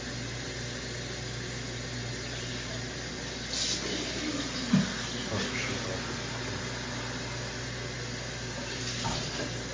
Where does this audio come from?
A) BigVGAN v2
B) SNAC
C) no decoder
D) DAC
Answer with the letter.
C